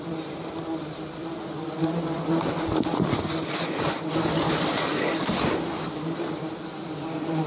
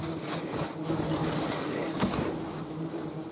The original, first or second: second